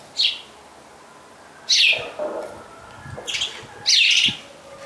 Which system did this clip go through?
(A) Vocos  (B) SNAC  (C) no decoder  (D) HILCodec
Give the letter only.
C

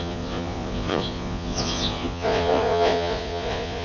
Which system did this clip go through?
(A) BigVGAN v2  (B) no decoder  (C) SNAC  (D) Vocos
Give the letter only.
D